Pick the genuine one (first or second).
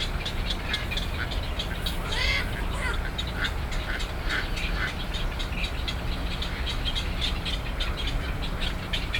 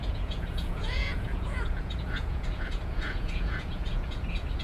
first